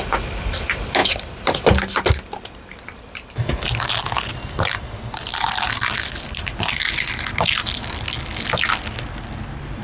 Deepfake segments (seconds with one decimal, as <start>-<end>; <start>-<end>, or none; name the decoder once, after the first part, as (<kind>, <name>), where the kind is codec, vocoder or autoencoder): none